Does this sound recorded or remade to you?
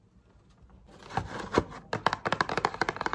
recorded